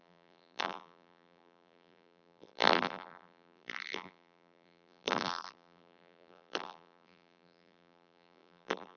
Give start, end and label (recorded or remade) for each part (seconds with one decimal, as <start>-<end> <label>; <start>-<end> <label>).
0.0-9.0 remade